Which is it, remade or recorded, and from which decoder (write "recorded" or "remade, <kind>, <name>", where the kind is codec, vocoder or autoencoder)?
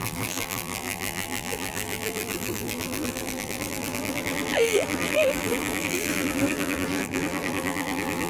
remade, vocoder, BigVGAN v2